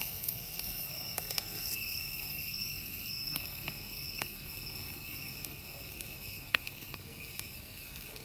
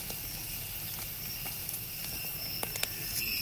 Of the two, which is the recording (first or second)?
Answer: second